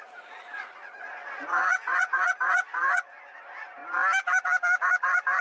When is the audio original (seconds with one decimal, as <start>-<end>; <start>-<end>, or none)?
3.8-4.8